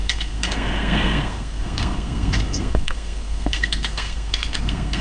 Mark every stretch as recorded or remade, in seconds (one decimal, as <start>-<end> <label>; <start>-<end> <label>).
0.0-5.0 remade